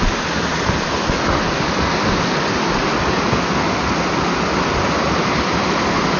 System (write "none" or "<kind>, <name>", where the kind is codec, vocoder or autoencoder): none